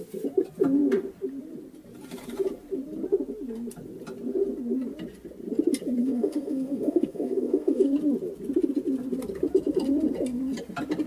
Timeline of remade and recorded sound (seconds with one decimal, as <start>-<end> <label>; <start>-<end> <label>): 0.0-6.0 recorded; 6.0-7.9 remade; 7.9-11.1 recorded